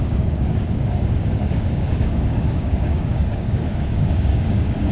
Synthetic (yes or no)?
yes